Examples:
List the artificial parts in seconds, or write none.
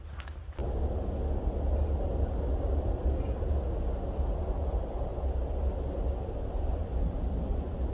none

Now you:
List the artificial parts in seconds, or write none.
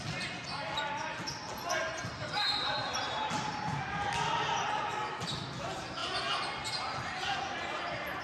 none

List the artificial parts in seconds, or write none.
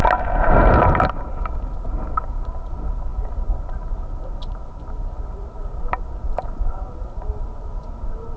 none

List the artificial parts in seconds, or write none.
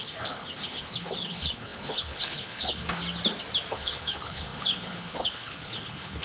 0.0-3.0 (codec, HILCodec); 3.7-6.2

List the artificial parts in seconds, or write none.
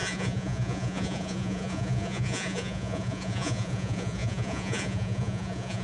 0.0-5.8 (vocoder, Vocos)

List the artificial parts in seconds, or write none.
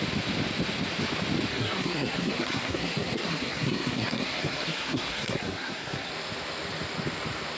1.5-6.1 (codec, SNAC)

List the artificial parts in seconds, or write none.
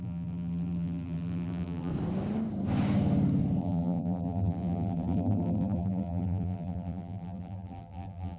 0.0-1.9 (vocoder, BigVGAN v2); 3.6-8.4